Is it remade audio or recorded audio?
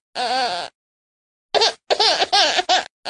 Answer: recorded